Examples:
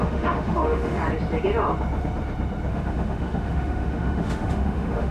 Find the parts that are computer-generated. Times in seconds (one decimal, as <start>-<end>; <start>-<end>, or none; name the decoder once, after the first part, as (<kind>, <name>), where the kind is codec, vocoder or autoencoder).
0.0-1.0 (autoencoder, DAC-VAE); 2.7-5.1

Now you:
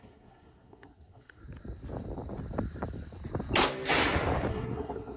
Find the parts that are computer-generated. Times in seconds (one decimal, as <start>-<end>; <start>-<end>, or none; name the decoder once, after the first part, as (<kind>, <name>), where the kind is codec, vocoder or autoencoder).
0.0-1.4 (codec, SNAC); 4.5-5.2

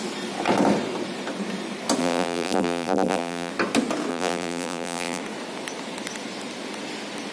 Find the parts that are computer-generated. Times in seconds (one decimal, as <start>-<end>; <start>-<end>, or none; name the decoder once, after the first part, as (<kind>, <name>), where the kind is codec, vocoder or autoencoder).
2.0-3.5 (vocoder, BigVGAN v2); 4.1-5.2

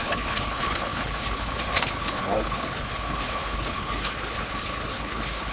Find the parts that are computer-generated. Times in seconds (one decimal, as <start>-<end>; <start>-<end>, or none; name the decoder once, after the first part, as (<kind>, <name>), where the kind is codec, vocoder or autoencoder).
0.0-5.5 (codec, HILCodec)